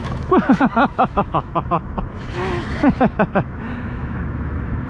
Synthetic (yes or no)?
yes